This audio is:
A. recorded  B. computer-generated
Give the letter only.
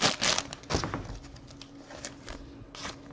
A